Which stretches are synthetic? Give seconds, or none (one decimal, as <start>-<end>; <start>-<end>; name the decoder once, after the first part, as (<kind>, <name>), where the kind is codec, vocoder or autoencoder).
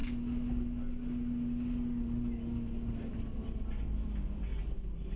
3.1-4.5 (vocoder, BigVGAN v2)